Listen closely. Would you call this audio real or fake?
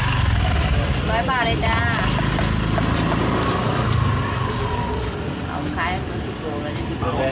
real